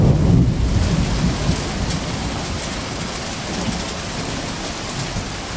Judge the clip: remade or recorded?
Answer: recorded